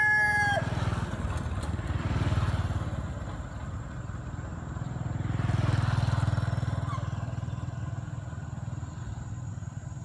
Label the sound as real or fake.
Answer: real